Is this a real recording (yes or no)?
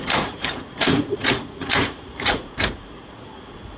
no